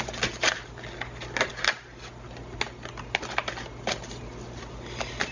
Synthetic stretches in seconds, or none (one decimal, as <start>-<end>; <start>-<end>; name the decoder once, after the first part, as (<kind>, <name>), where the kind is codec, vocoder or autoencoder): none